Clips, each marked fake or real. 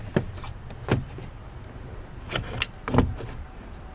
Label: real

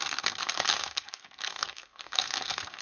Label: fake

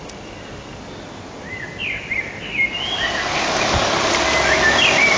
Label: real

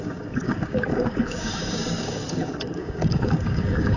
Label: fake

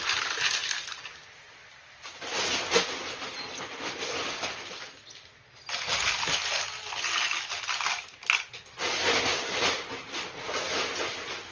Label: real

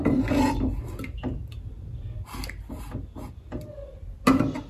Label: real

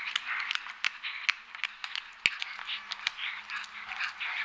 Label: real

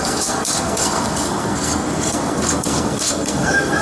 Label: fake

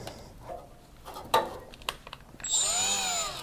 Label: real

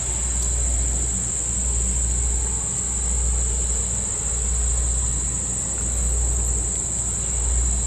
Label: real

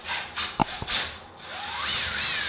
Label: real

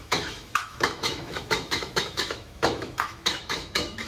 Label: fake